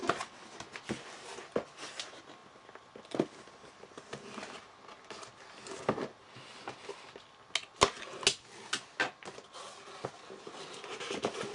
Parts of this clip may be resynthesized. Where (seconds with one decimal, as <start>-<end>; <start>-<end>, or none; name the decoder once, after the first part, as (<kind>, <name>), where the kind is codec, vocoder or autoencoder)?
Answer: none